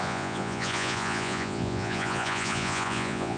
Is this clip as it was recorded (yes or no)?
no